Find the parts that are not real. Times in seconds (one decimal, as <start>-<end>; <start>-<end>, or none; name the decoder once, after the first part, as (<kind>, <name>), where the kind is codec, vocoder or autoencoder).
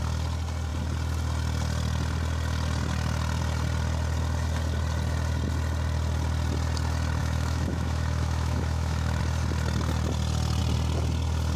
7.2-9.2 (autoencoder, DAC-VAE)